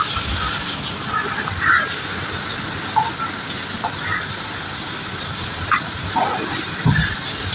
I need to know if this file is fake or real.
real